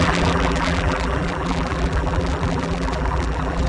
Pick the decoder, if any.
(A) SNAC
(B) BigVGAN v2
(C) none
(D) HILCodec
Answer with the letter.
B